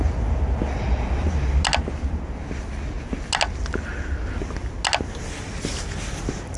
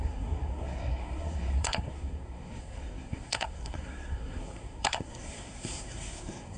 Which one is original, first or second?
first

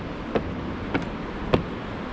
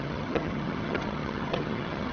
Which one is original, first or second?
first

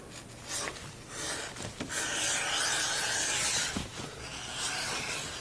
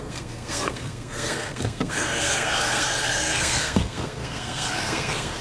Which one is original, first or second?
first